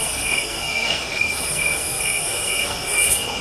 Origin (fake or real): fake